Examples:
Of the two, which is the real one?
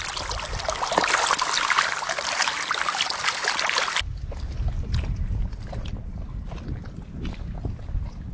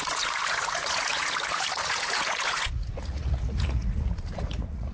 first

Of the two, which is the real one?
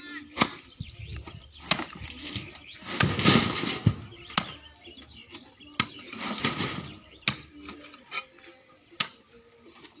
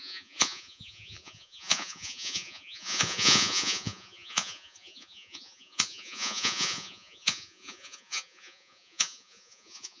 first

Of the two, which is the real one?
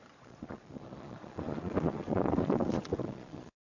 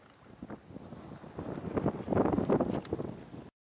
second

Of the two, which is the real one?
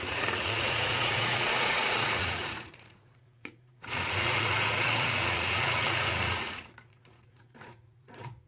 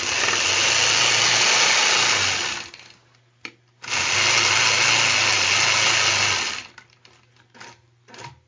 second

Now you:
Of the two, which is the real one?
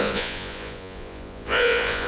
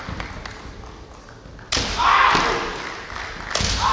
second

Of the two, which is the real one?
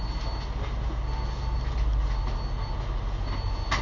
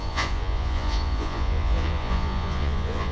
first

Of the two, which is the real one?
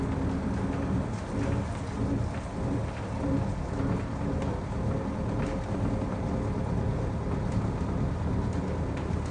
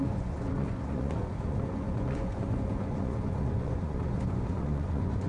first